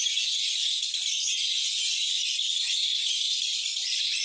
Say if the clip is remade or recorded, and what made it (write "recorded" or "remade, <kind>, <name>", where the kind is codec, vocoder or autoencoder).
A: remade, vocoder, BigVGAN v2